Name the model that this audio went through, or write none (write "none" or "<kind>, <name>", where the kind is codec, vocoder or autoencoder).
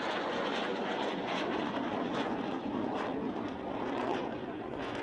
vocoder, Vocos